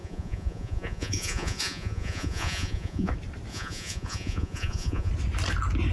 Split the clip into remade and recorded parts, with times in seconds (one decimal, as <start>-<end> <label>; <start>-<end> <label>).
0.0-3.1 remade; 3.1-3.5 recorded; 3.5-5.1 remade; 5.1-5.9 recorded